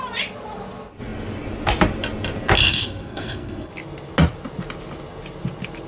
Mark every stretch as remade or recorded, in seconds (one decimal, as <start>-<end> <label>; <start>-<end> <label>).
0.0-2.6 recorded; 2.6-3.7 remade; 3.7-5.9 recorded